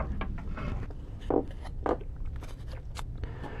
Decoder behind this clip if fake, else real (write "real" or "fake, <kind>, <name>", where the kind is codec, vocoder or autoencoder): real